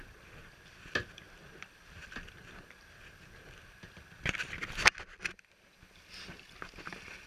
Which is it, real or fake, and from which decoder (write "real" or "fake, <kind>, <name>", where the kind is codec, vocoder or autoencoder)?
real